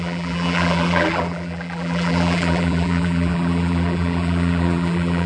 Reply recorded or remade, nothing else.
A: remade